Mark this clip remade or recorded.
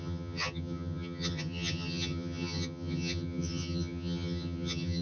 remade